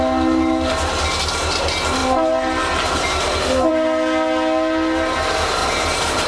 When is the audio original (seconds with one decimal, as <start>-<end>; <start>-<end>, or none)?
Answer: 0.0-2.0; 3.7-5.6